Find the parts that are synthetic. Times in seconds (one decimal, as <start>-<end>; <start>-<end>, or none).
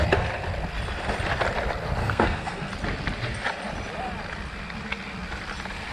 2.0-2.7